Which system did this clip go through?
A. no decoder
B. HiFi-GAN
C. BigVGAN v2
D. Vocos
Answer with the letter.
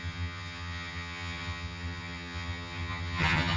B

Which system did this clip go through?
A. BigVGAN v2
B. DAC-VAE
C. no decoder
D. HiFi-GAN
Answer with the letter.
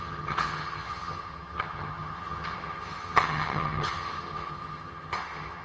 D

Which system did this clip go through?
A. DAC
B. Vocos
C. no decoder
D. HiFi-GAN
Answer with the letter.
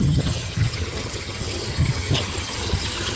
D